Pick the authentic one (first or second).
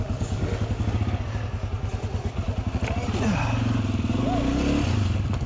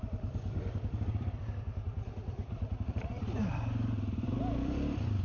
first